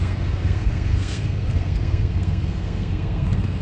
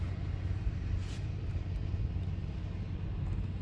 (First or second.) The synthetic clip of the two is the first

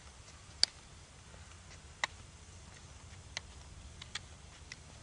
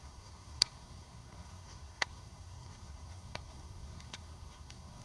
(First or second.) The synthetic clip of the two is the second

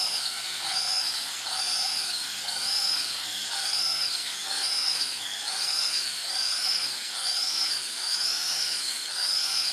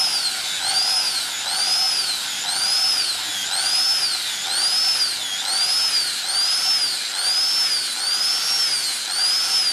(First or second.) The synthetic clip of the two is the first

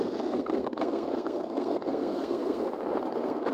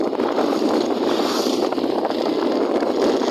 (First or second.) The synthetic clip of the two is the first